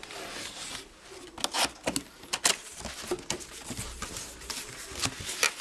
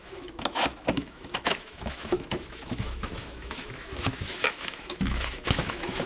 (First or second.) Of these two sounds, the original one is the first